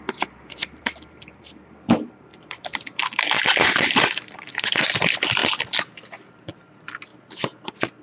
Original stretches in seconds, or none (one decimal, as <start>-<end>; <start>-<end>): 5.4-6.3; 7.1-7.6